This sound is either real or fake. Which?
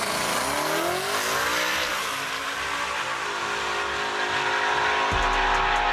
real